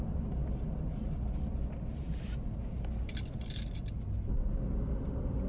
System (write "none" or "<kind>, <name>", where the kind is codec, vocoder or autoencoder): none